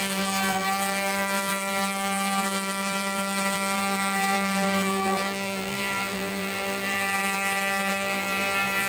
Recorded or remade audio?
remade